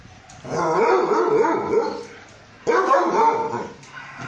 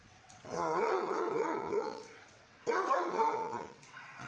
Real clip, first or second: first